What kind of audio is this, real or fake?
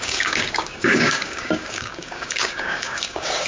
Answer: fake